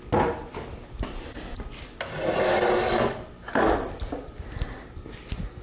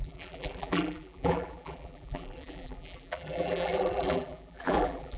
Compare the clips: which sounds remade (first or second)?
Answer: second